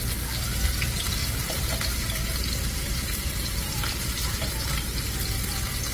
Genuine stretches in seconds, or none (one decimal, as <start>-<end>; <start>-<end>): 0.0-1.2; 4.5-5.9